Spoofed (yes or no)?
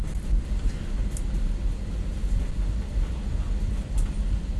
no